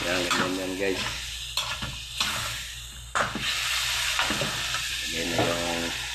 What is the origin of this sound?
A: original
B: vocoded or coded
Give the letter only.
A